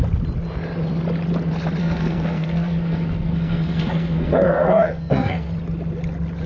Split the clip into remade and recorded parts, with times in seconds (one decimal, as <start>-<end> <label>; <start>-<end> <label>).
0.0-1.8 recorded; 1.8-5.5 remade; 5.5-6.5 recorded